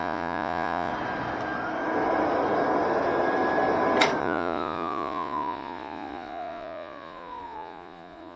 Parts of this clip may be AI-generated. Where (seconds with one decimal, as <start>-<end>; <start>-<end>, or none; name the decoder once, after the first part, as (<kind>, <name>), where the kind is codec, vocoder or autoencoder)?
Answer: 0.0-0.9 (vocoder, Vocos); 4.2-8.4